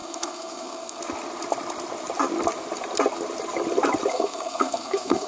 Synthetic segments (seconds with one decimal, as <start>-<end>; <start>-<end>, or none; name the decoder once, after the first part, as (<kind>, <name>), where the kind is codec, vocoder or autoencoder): 0.0-1.0 (codec, SNAC); 4.1-5.3